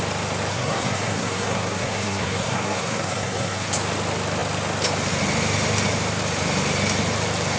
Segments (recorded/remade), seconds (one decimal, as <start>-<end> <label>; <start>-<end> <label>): 0.0-0.5 recorded; 0.5-3.7 remade; 3.7-7.6 recorded